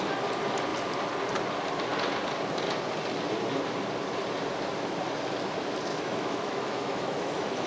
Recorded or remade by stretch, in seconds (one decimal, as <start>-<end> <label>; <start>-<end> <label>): 0.0-5.9 recorded; 5.9-7.7 remade